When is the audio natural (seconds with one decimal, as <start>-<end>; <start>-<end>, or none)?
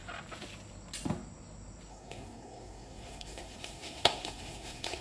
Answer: 0.0-1.9